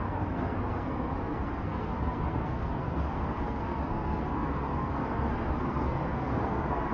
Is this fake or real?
fake